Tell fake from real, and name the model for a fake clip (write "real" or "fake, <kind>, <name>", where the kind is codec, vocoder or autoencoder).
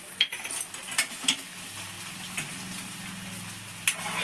real